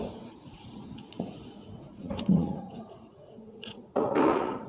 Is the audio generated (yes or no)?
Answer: yes